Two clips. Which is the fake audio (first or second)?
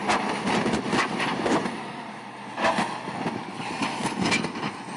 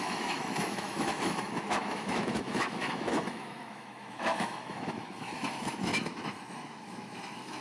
second